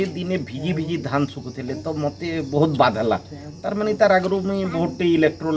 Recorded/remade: recorded